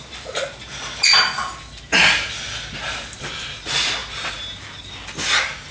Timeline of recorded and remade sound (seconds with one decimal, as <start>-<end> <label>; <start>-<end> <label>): 0.0-5.7 recorded